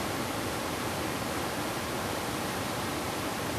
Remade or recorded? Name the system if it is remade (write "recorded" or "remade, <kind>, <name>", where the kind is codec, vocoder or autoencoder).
remade, vocoder, BigVGAN v2